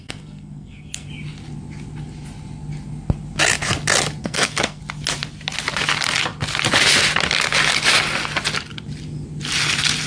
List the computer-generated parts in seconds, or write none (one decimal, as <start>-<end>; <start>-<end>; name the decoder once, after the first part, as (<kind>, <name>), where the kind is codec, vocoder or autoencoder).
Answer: 0.0-1.1 (codec, SNAC); 4.2-4.8